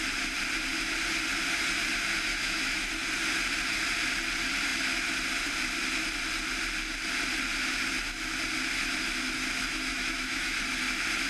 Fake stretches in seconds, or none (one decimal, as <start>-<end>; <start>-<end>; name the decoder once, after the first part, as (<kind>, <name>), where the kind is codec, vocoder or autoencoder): 2.3-2.9 (autoencoder, DAC-VAE); 9.9-10.6